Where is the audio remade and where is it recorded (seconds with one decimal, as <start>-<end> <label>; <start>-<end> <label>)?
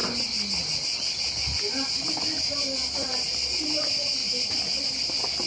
0.0-5.5 recorded